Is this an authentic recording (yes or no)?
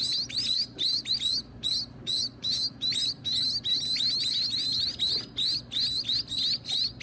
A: yes